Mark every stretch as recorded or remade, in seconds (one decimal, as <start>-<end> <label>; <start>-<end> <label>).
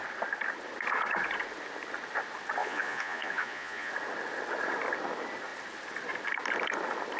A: 0.0-2.6 recorded; 2.6-3.9 remade; 3.9-7.2 recorded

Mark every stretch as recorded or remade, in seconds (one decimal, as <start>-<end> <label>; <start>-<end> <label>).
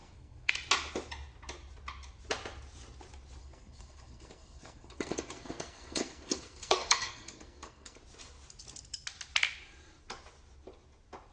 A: 0.0-0.5 remade; 0.5-3.4 recorded; 3.4-8.0 remade; 8.0-11.3 recorded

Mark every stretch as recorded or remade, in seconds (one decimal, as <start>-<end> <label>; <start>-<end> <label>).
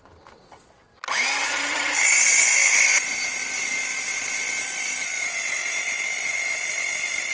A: 0.0-1.4 recorded; 1.4-2.0 remade; 2.0-7.3 recorded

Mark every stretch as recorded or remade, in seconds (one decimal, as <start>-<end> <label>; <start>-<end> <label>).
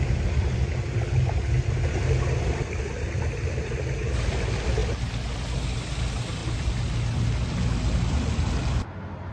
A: 0.0-9.3 recorded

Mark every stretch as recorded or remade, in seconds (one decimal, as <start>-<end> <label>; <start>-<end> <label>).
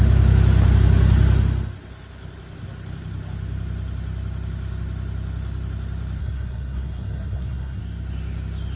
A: 0.0-6.2 recorded; 6.2-7.8 remade; 7.8-8.8 recorded